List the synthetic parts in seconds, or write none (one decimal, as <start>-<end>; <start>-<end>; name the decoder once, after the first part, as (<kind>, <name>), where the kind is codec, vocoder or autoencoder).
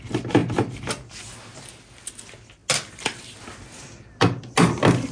none